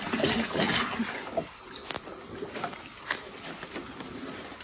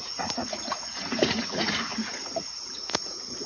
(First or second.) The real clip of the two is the first